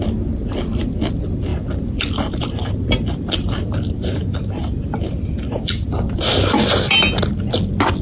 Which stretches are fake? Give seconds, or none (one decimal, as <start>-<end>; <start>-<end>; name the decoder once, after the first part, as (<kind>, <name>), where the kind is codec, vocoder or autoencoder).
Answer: 1.5-6.1 (vocoder, BigVGAN v2)